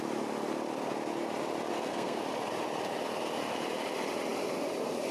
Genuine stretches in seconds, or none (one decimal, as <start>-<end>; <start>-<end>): 0.0-1.7; 2.2-5.1